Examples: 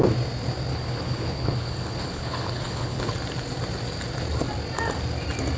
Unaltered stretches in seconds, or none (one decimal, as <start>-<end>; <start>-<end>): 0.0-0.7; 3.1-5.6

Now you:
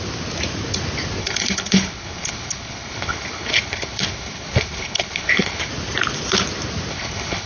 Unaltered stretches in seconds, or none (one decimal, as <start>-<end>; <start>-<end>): 0.0-1.2; 5.7-6.9

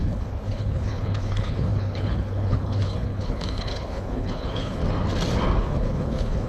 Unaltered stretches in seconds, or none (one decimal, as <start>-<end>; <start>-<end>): 4.8-5.6